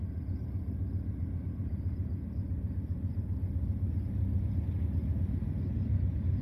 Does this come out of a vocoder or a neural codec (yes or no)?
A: yes